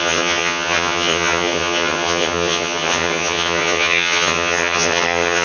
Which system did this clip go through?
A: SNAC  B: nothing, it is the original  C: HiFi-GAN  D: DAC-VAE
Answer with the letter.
C